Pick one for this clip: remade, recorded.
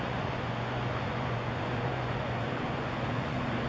remade